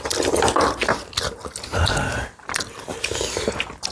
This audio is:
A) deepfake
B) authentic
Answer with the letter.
B